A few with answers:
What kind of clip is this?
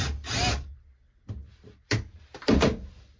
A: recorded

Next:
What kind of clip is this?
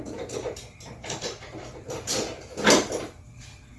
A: recorded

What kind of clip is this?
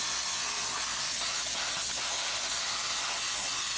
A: recorded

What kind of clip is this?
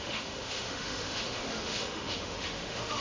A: remade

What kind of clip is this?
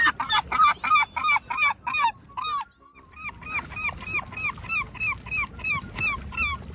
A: recorded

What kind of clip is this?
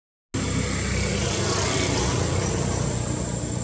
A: recorded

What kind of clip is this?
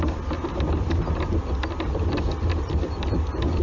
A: recorded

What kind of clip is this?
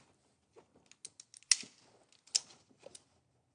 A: recorded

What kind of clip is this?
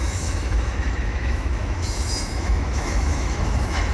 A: remade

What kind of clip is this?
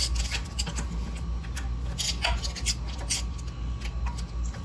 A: recorded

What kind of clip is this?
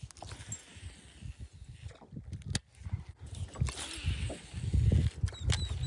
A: recorded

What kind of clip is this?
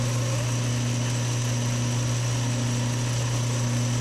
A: recorded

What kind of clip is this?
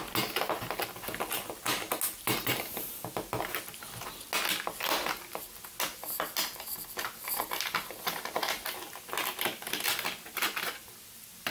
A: recorded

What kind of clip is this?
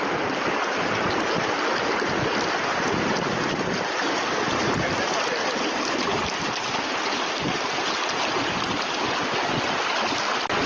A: recorded